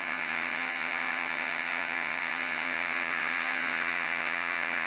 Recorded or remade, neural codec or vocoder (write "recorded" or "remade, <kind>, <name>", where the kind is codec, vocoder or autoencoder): remade, vocoder, HiFi-GAN